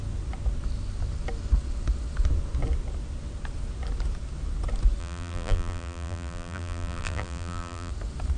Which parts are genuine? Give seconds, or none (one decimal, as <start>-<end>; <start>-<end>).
0.0-5.0; 7.9-8.4